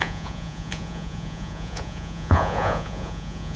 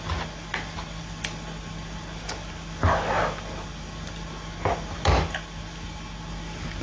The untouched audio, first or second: second